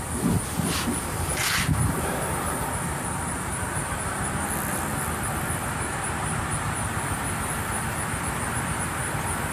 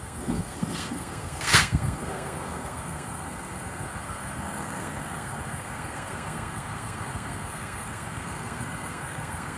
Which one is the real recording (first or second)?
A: first